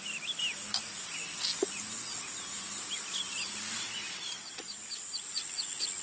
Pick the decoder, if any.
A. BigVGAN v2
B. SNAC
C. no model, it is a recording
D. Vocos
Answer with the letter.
C